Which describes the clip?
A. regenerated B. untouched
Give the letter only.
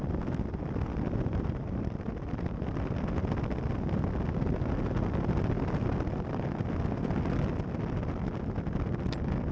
B